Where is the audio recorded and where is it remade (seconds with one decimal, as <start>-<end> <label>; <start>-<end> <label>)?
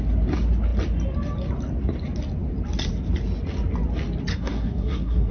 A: 0.0-4.3 recorded; 4.3-5.3 remade